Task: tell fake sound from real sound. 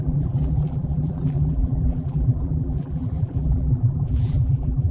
fake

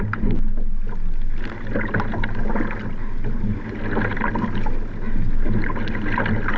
real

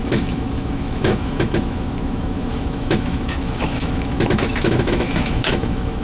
fake